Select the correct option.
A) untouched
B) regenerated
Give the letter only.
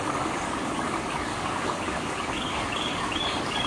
B